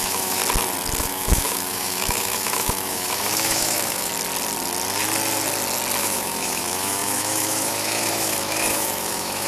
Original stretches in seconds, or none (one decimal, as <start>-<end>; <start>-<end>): 0.4-1.0; 4.1-6.0